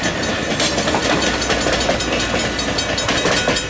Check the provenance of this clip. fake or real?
real